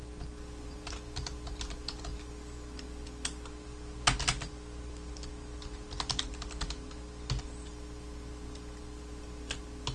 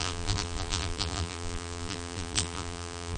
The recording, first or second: first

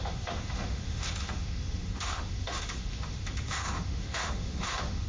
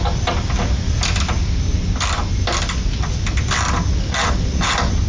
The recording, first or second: second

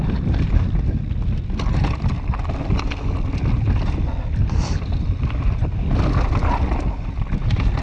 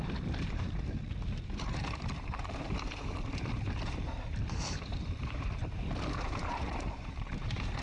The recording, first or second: first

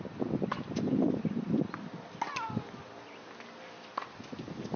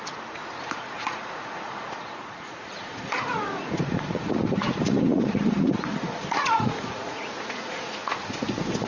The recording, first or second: first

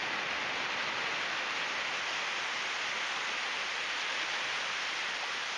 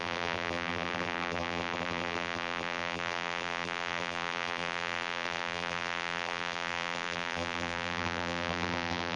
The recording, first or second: first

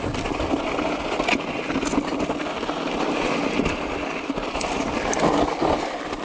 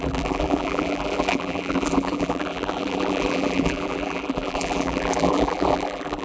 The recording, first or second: first